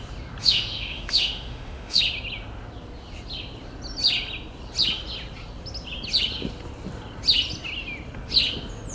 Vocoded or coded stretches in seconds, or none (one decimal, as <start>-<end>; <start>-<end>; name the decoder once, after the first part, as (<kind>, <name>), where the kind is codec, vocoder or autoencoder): 0.4-2.0 (autoencoder, DAC-VAE)